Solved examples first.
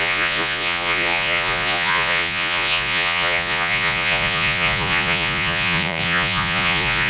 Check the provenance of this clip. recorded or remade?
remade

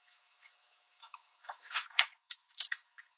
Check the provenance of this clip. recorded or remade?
remade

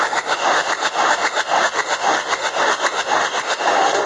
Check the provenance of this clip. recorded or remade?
remade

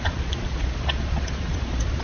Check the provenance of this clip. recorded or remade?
remade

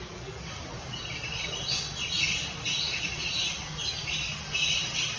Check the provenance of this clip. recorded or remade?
recorded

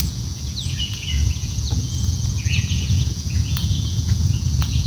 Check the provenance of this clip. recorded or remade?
remade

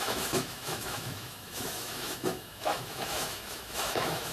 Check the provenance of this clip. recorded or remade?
remade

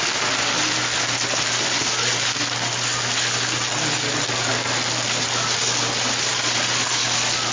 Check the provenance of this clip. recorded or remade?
recorded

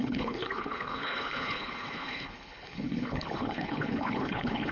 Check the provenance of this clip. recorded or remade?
remade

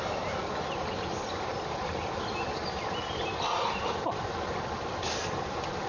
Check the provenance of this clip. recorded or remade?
recorded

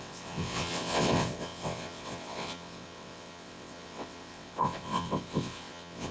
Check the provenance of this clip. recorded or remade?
remade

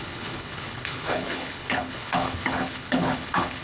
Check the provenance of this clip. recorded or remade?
remade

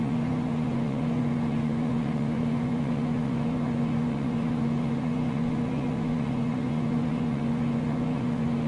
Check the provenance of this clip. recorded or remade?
remade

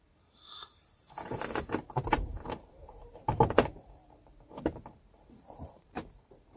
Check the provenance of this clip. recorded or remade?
remade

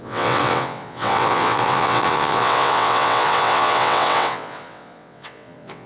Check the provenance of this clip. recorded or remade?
remade